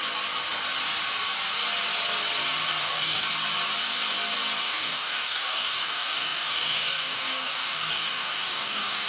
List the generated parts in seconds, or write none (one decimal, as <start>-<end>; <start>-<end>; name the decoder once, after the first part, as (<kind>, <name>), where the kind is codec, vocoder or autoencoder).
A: 2.8-3.3 (codec, DAC); 4.6-9.1